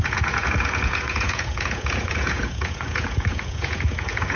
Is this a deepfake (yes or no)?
yes